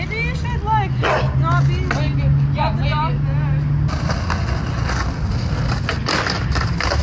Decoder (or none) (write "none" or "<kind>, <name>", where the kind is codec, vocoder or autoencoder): none